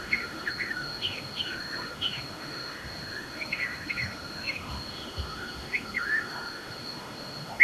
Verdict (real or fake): fake